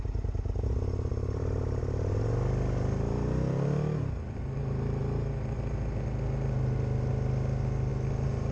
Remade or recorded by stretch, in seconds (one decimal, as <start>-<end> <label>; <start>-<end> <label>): 0.0-1.1 recorded; 1.1-1.8 remade; 1.8-8.5 recorded